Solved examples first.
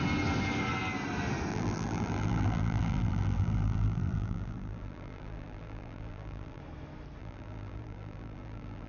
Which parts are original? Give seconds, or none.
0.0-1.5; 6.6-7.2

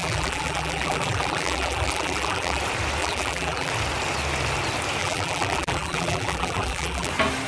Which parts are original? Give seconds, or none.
2.6-3.0; 3.7-5.0; 7.1-7.5

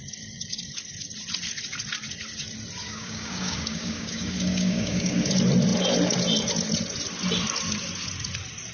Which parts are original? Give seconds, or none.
0.0-2.8; 5.3-8.7

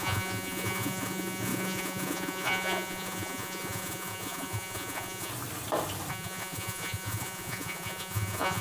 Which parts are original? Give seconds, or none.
5.3-6.1

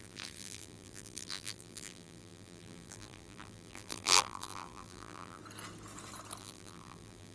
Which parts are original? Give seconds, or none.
5.4-6.4

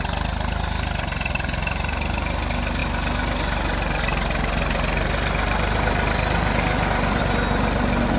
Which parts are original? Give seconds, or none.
0.0-8.2

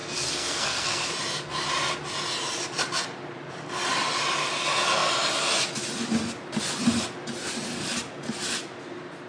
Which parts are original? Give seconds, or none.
1.1-9.3